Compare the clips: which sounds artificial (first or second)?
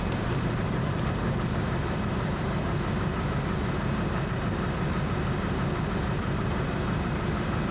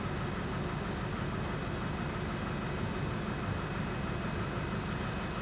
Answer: first